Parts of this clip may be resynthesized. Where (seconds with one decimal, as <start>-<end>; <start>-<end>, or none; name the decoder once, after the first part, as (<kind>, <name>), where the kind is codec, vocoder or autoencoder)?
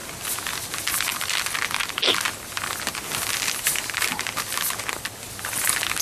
none